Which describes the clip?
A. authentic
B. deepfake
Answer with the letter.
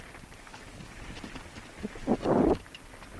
A